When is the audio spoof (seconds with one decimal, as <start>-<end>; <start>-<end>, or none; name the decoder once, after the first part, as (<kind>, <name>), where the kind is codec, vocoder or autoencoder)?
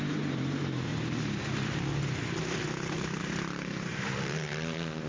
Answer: 0.0-0.9 (vocoder, BigVGAN v2); 3.2-5.1